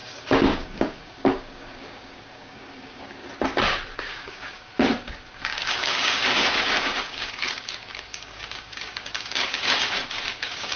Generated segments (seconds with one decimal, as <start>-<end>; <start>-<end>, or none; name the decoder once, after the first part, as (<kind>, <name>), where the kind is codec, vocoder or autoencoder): 0.0-3.2 (codec, DAC); 4.0-4.7; 5.4-10.8